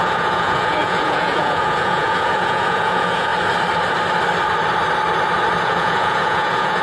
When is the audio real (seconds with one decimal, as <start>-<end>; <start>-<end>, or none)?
3.3-5.6